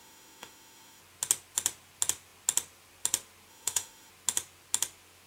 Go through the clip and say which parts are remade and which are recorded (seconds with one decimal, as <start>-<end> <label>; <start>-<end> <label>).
0.0-1.0 remade; 1.0-3.5 recorded; 3.5-4.1 remade; 4.1-5.3 recorded